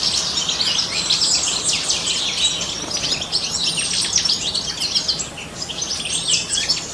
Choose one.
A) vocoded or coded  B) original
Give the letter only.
B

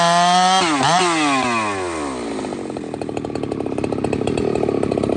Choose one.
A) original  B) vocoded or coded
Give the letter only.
A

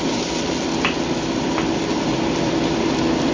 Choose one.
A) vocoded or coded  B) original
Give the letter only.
A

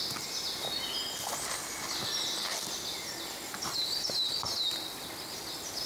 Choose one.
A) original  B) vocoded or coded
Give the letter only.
A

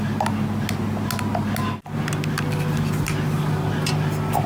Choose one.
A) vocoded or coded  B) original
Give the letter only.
B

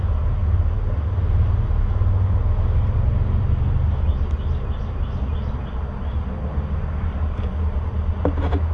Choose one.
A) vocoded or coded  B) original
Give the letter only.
B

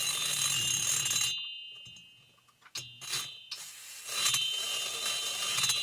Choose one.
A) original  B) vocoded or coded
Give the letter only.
A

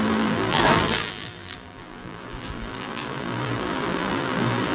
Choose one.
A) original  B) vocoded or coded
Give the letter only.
B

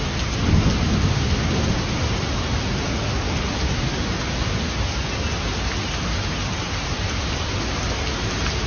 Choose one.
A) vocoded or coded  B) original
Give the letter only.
B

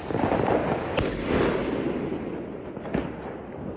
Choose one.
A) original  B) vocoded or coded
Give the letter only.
A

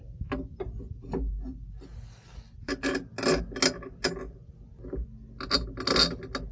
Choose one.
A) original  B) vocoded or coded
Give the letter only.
A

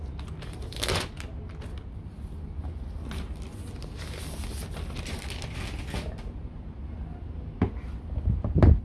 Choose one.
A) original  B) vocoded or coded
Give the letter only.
A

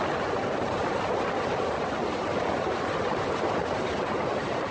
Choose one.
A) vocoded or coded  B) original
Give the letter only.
B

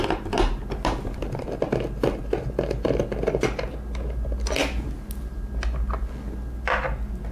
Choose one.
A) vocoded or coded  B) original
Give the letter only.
B